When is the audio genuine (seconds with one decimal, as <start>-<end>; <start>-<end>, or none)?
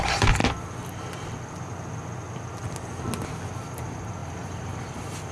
0.4-3.6